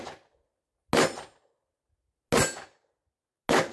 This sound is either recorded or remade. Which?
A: recorded